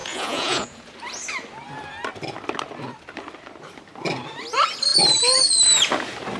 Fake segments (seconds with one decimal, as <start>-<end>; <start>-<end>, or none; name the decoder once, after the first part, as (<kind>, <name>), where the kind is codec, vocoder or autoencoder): 0.0-0.9 (vocoder, Vocos)